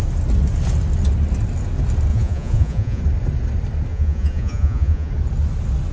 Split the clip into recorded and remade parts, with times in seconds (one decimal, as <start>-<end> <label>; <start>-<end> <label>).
0.0-2.1 recorded; 2.1-3.0 remade; 3.0-3.9 recorded; 3.9-5.1 remade; 5.1-5.9 recorded

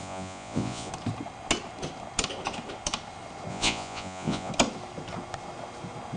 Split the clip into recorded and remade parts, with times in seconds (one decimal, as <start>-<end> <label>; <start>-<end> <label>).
0.0-0.9 remade; 0.9-3.5 recorded; 3.5-4.5 remade; 4.5-6.2 recorded